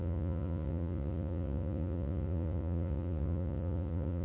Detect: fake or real fake